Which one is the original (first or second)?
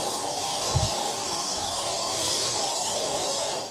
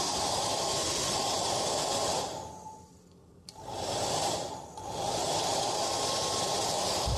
second